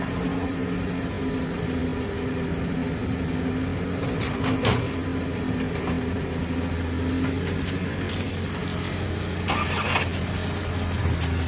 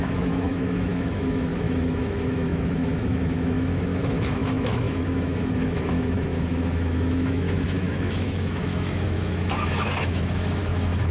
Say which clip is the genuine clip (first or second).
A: first